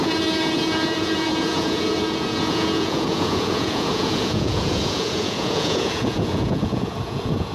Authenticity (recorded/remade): remade